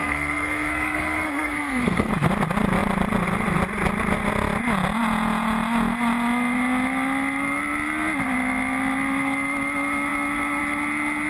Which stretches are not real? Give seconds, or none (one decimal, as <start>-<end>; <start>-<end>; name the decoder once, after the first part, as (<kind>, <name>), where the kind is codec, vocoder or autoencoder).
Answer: 0.0-2.1 (codec, SNAC)

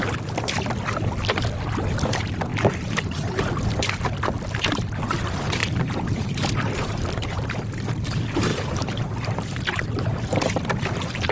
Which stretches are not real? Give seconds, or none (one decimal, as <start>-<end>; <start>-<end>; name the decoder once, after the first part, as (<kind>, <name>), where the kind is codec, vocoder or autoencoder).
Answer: 2.5-3.4 (vocoder, BigVGAN v2); 5.6-7.5; 8.5-9.9

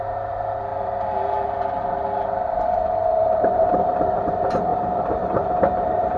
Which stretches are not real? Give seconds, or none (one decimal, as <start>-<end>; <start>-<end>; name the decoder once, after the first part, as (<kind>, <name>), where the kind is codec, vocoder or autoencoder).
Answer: 0.0-6.2 (vocoder, BigVGAN v2)